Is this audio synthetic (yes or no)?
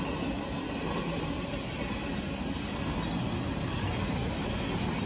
no